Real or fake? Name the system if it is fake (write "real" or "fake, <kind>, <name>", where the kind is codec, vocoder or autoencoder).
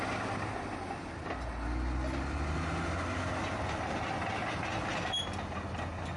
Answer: real